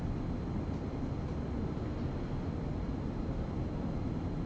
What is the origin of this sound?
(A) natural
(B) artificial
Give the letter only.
A